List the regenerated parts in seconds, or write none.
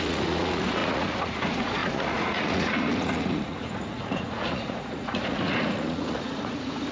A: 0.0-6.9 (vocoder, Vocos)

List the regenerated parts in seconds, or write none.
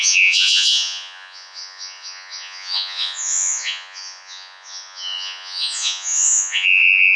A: 0.0-7.2 (vocoder, Vocos)